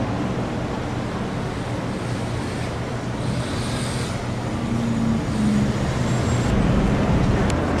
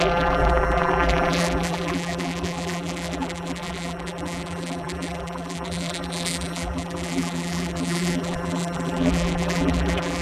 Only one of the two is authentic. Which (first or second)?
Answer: first